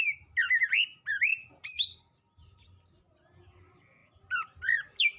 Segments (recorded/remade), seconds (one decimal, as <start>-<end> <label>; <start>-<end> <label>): 0.0-5.2 recorded

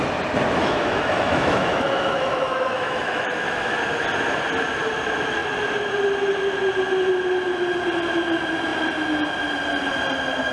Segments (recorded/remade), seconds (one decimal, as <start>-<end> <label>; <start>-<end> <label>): 0.0-0.6 recorded; 0.6-3.7 remade; 3.7-10.5 recorded

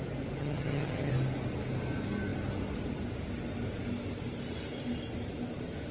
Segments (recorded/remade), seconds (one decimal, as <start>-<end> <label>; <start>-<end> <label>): 0.0-0.4 recorded; 0.4-1.1 remade; 1.1-5.9 recorded

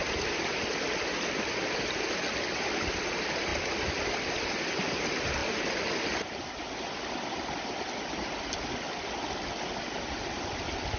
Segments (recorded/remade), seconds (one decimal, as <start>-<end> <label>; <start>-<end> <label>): 0.0-11.0 recorded

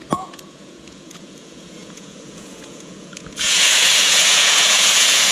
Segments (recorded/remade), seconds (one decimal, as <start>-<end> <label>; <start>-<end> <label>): 0.0-5.3 remade

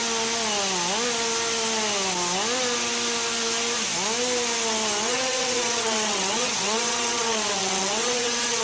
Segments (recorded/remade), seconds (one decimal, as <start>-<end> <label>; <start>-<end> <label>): 0.0-5.0 recorded; 5.0-8.6 remade